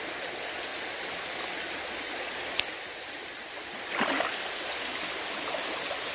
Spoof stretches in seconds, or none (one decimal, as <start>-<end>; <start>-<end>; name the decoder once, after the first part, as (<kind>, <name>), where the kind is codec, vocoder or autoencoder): 2.7-3.4 (vocoder, BigVGAN v2)